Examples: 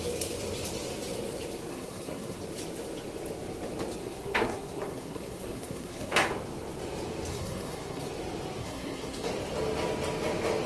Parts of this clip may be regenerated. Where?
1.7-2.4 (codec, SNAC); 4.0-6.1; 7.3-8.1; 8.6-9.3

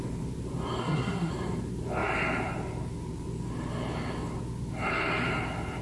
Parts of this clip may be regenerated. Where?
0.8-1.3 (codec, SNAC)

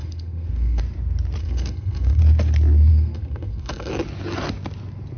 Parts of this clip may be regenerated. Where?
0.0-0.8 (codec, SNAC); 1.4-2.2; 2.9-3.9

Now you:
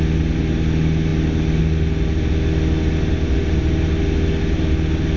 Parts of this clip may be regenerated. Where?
none

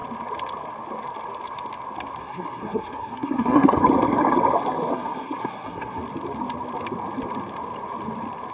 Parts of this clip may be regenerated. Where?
2.2-3.8 (codec, SNAC); 4.9-6.0